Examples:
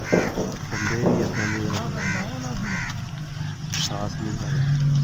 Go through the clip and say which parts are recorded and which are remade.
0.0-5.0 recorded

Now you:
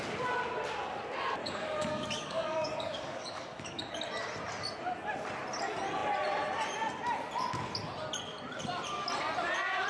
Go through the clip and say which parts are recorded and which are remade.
0.0-1.4 recorded; 1.4-3.8 remade; 3.8-9.9 recorded